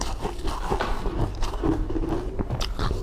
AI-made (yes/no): no